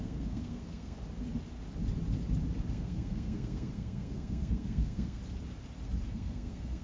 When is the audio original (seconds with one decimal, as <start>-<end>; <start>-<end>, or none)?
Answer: 1.0-2.7; 5.2-6.1